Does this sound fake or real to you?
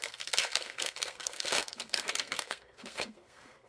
fake